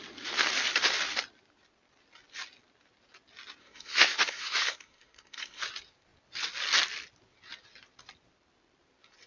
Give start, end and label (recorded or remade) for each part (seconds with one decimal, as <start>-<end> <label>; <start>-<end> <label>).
0.0-3.6 recorded; 3.6-5.6 remade; 5.6-9.3 recorded